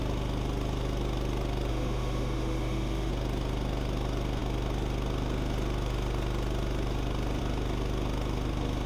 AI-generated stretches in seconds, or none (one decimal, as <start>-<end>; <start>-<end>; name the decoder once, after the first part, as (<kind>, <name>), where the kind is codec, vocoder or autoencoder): 1.7-3.1 (autoencoder, DAC-VAE)